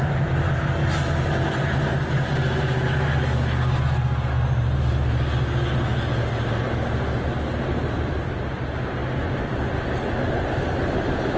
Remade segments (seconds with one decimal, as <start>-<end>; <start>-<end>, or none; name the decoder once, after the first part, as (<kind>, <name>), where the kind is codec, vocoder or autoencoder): none